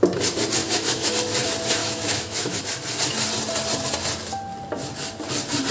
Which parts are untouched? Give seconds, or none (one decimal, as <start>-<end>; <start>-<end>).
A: 0.0-0.6; 1.1-1.8; 2.6-5.7